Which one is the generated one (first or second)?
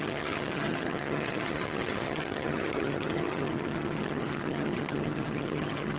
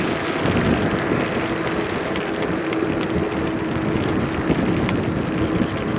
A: first